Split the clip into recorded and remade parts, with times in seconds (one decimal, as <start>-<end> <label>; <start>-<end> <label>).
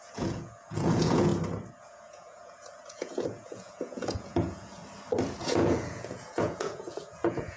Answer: 0.0-1.3 remade; 1.3-1.8 recorded; 1.8-4.8 remade; 4.8-5.4 recorded; 5.4-7.6 remade